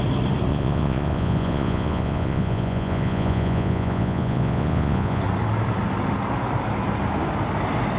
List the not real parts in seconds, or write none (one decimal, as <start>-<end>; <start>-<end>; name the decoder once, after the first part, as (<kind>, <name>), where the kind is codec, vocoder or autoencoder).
0.5-5.2 (vocoder, Vocos)